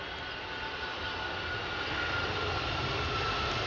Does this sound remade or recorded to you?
recorded